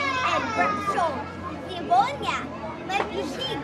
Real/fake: real